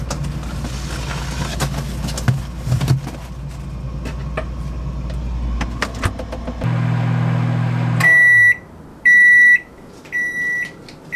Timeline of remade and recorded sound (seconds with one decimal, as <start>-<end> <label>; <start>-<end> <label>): 0.0-8.9 recorded; 8.9-9.9 remade; 9.9-11.2 recorded

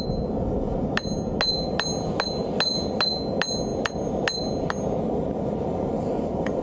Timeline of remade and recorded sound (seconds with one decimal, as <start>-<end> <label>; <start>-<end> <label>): 0.0-6.6 recorded

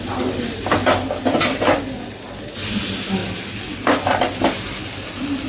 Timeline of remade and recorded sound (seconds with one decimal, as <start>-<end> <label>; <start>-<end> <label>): 0.0-5.5 recorded

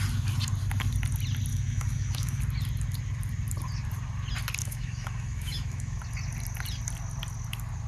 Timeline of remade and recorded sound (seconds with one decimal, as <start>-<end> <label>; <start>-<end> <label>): 0.0-1.5 recorded; 1.5-2.4 remade; 2.4-4.6 recorded; 4.6-6.0 remade; 6.0-7.9 recorded

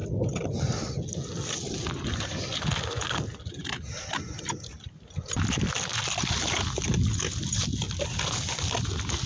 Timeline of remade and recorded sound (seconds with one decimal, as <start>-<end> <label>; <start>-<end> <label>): 0.0-9.3 recorded

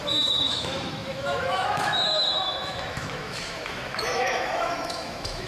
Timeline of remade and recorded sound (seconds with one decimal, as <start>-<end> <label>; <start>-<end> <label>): 0.0-5.5 remade

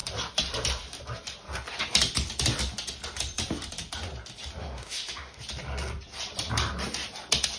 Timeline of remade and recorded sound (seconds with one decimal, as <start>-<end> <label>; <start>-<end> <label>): 0.0-4.6 recorded; 4.6-5.4 remade; 5.4-7.6 recorded

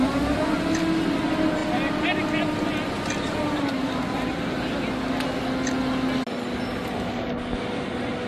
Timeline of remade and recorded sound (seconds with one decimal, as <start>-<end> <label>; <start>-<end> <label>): 0.0-8.3 recorded